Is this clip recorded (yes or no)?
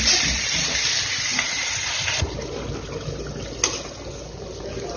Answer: yes